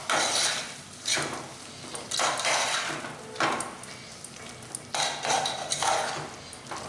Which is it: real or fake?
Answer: real